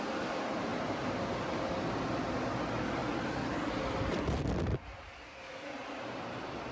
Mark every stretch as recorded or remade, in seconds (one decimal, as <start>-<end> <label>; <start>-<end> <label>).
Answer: 0.0-0.7 recorded; 0.7-1.2 remade; 1.2-3.0 recorded; 3.0-6.7 remade